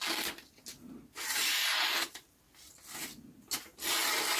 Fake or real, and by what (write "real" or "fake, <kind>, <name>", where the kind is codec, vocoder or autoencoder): real